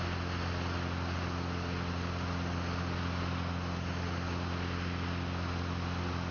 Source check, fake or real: real